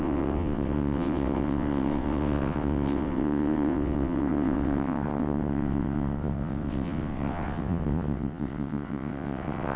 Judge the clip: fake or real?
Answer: fake